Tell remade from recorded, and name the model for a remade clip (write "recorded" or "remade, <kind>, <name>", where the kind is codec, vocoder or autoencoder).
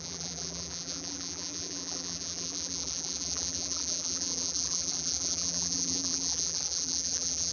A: remade, vocoder, BigVGAN v2